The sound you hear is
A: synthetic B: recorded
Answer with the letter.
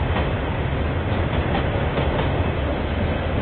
B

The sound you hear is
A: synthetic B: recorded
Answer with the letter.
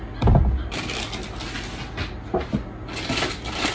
B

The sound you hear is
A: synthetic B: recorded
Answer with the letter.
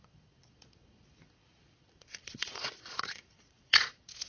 A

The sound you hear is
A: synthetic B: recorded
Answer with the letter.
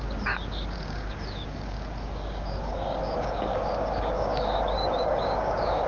A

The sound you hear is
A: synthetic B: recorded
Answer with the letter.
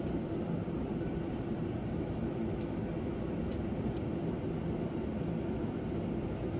B